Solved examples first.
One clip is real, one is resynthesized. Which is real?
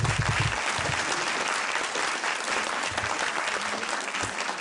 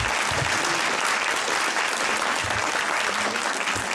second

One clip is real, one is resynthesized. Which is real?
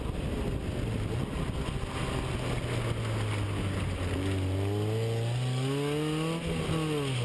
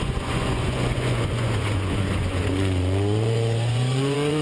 first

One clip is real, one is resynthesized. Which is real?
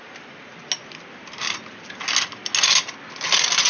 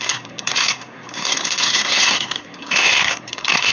first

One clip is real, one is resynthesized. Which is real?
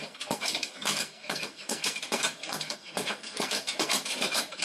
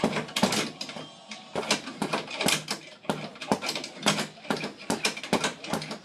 second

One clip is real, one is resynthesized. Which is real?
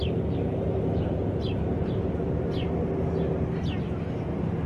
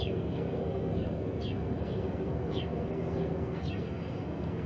first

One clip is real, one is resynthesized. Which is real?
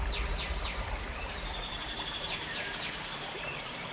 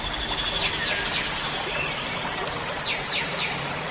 second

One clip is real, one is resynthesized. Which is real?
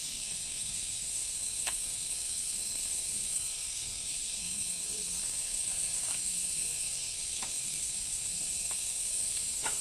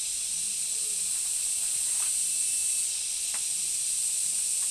second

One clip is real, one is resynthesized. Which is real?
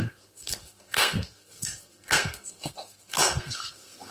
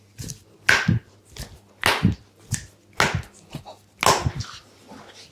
second